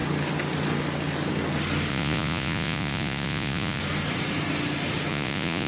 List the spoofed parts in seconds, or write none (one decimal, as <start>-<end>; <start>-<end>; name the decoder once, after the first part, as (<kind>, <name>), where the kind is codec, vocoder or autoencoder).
1.9-3.8 (vocoder, Vocos); 5.1-5.7